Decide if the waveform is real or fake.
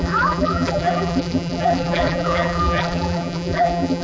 fake